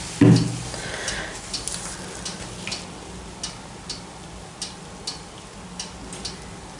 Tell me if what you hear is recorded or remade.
recorded